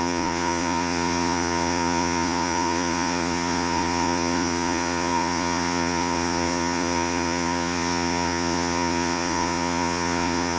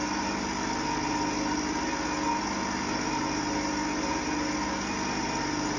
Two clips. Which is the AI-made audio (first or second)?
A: first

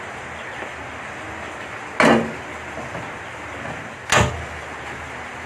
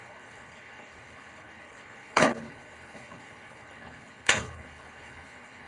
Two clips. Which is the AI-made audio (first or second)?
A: second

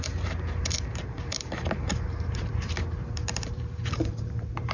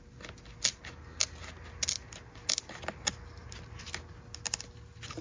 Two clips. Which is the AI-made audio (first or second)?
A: first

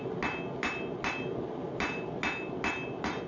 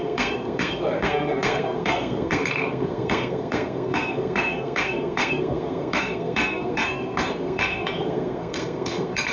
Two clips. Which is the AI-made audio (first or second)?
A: second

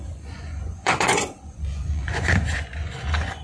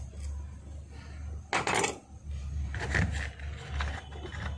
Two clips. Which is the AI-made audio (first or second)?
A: first